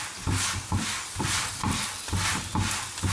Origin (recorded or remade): recorded